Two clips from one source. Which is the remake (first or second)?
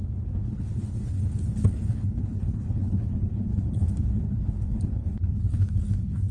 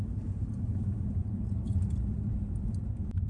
first